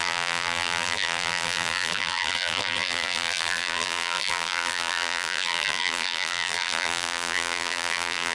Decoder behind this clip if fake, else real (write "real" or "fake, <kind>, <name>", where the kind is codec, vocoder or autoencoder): fake, vocoder, BigVGAN v2